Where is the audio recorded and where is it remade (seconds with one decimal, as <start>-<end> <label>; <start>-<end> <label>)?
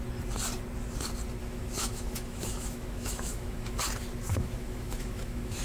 0.0-1.4 recorded; 1.4-3.8 remade; 3.8-4.3 recorded; 4.3-5.6 remade